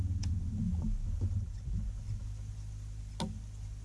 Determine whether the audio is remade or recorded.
recorded